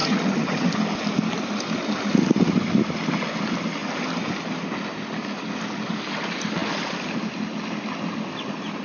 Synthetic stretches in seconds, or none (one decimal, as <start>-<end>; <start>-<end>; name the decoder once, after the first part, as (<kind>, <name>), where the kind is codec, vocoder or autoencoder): 0.0-0.7 (vocoder, HiFi-GAN)